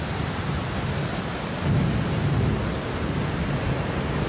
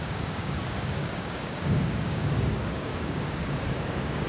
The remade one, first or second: second